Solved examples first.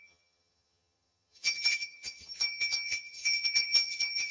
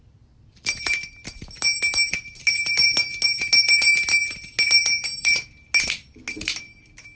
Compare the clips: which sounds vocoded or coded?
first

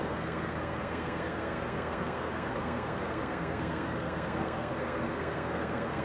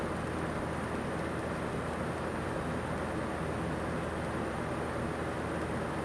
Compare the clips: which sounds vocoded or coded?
first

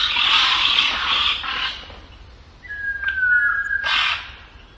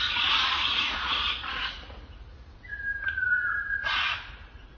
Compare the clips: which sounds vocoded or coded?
second